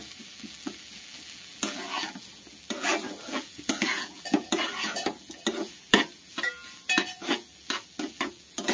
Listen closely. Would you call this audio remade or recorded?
remade